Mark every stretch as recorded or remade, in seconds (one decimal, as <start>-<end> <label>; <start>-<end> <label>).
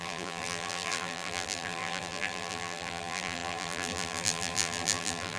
0.0-5.4 remade